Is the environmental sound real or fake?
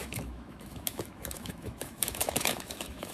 fake